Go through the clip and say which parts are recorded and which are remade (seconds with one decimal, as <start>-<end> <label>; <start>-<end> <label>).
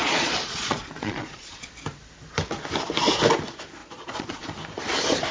0.0-1.7 remade; 1.7-3.8 recorded; 3.8-4.4 remade; 4.4-5.3 recorded